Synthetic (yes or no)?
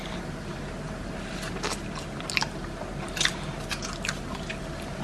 no